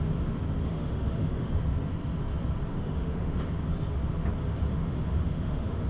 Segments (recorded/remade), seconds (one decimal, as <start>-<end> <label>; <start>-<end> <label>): 0.0-0.6 recorded; 0.6-1.5 remade; 1.5-2.7 recorded; 2.7-3.5 remade; 3.5-4.7 recorded; 4.7-5.9 remade